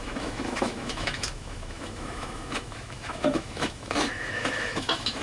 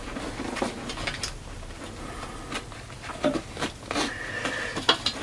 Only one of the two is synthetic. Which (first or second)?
first